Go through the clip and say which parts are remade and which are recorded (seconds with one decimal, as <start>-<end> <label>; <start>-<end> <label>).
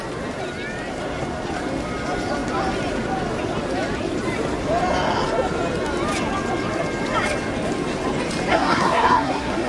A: 0.0-8.5 recorded; 8.5-9.7 remade